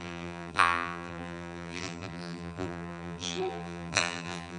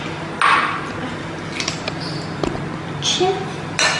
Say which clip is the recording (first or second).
second